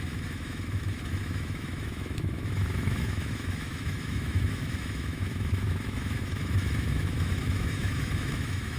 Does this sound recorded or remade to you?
remade